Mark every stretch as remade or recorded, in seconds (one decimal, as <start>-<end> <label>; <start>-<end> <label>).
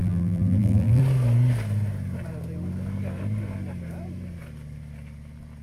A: 0.0-1.0 remade; 1.0-5.6 recorded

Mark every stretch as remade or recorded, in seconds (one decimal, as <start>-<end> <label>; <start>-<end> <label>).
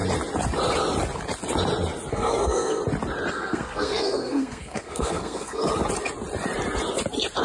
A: 0.0-2.1 recorded; 2.1-2.8 remade; 2.8-3.3 recorded; 3.3-5.6 remade; 5.6-7.4 recorded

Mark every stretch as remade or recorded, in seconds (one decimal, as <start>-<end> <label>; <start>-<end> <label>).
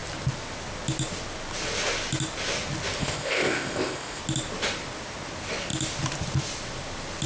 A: 0.0-3.0 recorded; 3.0-4.2 remade; 4.2-7.3 recorded